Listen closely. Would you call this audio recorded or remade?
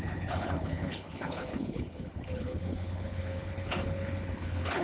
remade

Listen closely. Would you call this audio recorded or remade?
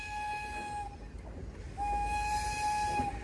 recorded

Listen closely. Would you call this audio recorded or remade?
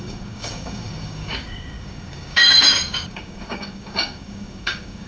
remade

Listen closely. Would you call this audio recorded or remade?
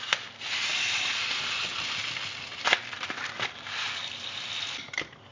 recorded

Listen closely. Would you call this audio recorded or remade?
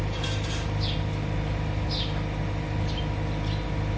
recorded